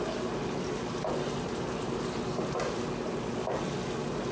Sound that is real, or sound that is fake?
real